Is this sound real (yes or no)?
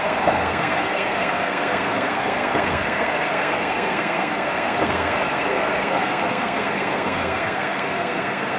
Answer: no